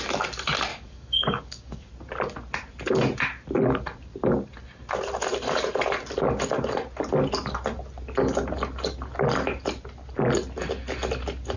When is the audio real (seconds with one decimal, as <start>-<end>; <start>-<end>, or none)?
0.0-0.7; 1.9-11.6

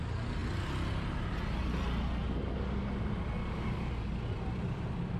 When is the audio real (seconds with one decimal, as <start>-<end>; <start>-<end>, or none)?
0.0-3.4; 3.9-5.2

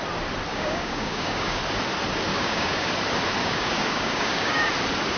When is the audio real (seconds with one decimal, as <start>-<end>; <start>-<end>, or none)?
0.0-0.5; 1.6-2.3; 2.9-3.4; 4.7-5.2